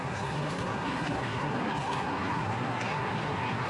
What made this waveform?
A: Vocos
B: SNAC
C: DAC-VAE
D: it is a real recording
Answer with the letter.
B